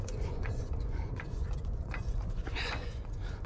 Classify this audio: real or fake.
fake